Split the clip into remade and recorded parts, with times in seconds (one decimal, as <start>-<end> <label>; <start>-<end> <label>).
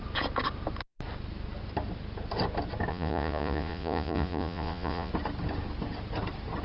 0.0-2.9 recorded; 2.9-5.1 remade; 5.1-6.6 recorded